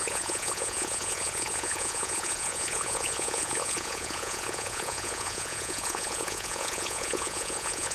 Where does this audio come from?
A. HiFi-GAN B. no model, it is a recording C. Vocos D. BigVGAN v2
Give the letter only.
C